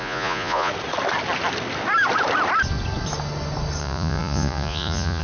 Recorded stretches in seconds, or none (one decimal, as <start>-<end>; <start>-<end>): 0.7-3.8